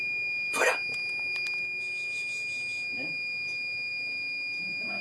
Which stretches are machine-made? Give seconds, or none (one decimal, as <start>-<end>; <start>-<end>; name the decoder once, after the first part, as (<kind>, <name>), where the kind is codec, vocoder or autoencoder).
none

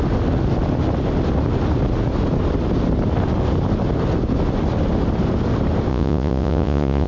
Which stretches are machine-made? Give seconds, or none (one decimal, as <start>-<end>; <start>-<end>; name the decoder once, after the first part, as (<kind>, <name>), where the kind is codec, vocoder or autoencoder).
5.9-7.1 (vocoder, Vocos)

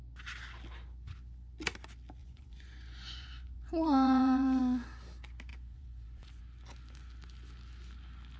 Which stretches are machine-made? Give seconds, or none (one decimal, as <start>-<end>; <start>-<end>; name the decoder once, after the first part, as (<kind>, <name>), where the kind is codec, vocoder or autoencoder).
2.2-4.6 (vocoder, Vocos); 5.5-6.4

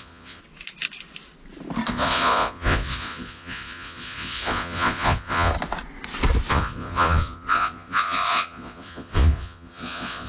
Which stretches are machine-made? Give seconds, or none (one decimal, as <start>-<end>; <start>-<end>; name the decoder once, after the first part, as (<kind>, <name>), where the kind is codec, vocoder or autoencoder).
0.0-0.4 (vocoder, Vocos); 1.9-5.5; 6.5-10.3

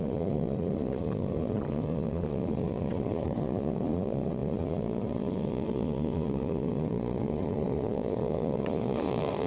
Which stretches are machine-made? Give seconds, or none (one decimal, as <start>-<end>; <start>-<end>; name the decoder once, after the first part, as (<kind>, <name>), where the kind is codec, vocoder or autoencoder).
0.0-9.5 (vocoder, Vocos)

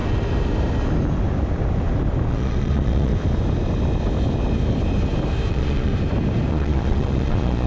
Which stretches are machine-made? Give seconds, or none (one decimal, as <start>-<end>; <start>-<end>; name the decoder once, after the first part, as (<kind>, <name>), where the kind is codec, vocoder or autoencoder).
2.3-3.1 (vocoder, Vocos); 5.5-5.9; 6.5-7.7

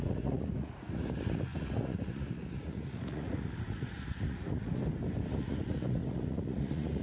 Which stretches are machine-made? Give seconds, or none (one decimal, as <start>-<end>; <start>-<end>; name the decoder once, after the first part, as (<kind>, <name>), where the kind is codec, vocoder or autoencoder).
0.0-4.8 (vocoder, Vocos); 5.3-7.0

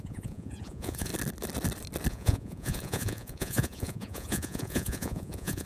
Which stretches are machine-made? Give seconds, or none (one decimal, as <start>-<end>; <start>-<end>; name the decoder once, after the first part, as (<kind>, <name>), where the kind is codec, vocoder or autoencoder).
0.0-1.1 (vocoder, Vocos); 2.1-5.7